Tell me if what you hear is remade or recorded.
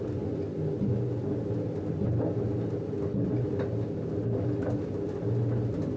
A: recorded